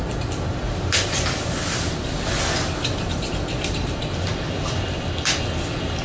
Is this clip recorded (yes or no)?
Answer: yes